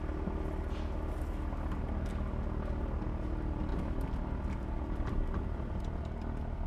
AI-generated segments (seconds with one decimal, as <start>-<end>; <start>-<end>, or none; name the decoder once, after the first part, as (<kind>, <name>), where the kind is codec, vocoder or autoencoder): none